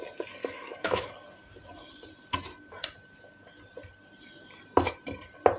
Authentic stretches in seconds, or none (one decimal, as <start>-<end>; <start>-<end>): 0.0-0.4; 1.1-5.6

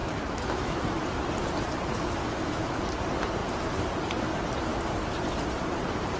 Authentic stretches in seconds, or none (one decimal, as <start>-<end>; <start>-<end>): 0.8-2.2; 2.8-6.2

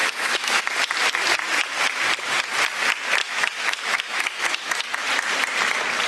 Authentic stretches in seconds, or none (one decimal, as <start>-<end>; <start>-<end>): 0.6-3.2; 4.8-6.1

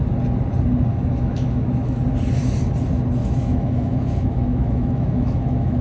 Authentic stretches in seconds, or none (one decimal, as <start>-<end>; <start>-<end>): 0.0-0.9; 2.0-3.2